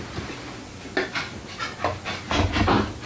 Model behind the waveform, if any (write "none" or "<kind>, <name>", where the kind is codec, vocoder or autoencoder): none